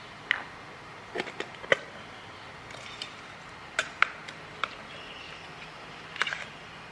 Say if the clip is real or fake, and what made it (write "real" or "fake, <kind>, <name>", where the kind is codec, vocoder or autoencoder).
real